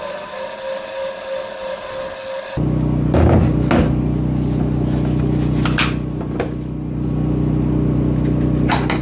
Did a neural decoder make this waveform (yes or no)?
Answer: no